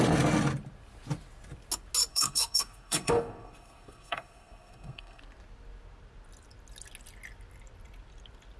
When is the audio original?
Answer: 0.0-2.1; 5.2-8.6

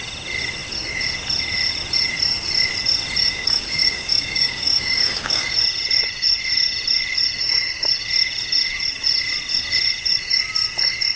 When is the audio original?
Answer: 0.0-3.2; 5.5-11.2